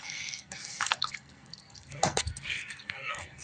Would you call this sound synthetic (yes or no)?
yes